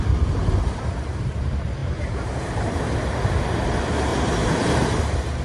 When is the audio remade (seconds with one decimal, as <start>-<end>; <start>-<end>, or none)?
1.8-2.9; 4.1-5.0